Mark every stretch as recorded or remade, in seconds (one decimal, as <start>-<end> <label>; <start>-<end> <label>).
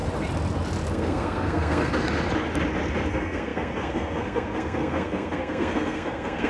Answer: 0.0-0.9 recorded; 0.9-1.9 remade; 1.9-3.1 recorded; 3.1-6.5 remade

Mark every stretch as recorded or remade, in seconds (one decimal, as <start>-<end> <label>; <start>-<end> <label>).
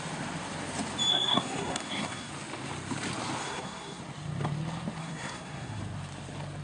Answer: 0.0-1.1 recorded; 1.1-2.3 remade; 2.3-3.4 recorded; 3.4-4.0 remade; 4.0-5.0 recorded; 5.0-5.8 remade; 5.8-6.6 recorded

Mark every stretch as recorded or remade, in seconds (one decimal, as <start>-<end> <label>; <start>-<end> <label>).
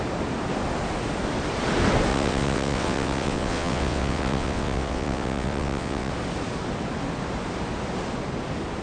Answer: 0.0-2.1 recorded; 2.1-6.1 remade; 6.1-8.8 recorded